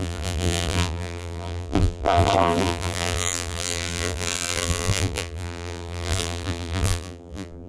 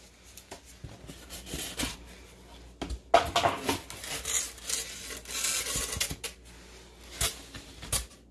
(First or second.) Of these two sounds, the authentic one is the second